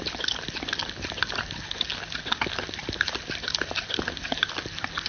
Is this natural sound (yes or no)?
yes